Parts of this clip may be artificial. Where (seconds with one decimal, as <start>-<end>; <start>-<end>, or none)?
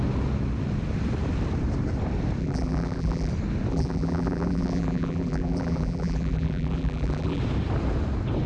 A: 2.4-3.3; 3.7-7.4